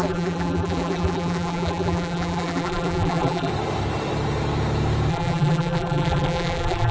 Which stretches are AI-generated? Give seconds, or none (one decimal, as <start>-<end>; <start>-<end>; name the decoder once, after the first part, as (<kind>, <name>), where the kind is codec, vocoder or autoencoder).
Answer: 0.0-3.5 (vocoder, BigVGAN v2); 5.1-6.9